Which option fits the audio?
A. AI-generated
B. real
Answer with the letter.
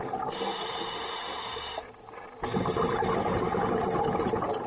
B